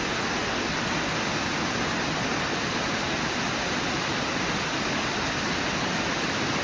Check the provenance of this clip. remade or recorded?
recorded